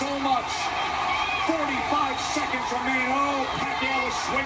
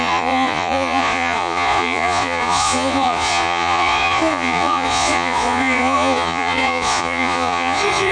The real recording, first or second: first